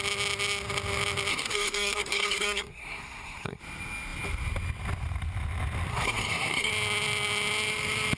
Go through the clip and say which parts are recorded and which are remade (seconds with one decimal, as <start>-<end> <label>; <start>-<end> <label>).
0.0-1.3 recorded; 1.3-3.6 remade; 3.6-5.9 recorded; 5.9-6.7 remade; 6.7-8.2 recorded